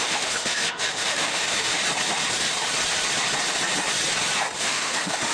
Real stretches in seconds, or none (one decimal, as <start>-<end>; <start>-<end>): 1.8-4.6